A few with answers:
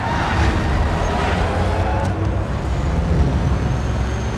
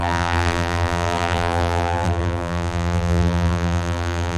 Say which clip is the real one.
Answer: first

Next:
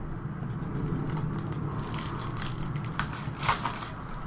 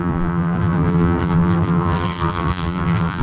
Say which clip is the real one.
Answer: first